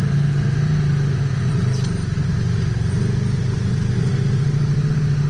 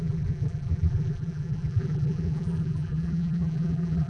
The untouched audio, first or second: first